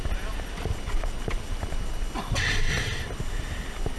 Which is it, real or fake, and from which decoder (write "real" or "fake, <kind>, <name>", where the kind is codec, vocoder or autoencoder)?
real